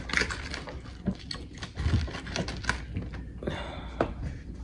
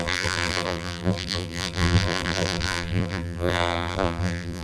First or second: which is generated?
second